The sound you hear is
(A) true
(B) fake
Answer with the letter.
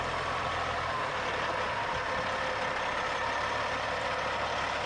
A